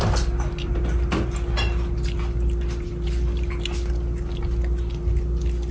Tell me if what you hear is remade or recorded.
recorded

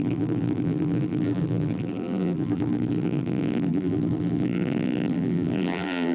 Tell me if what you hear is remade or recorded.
remade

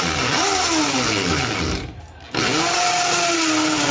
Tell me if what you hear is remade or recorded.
recorded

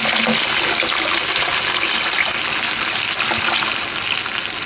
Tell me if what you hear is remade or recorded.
recorded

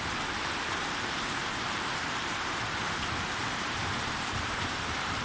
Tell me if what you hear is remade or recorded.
remade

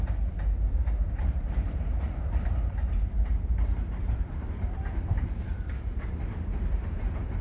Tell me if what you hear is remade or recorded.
remade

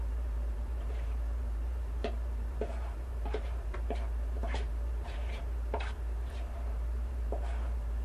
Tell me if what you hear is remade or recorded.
remade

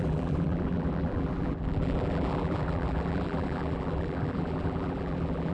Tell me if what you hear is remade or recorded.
remade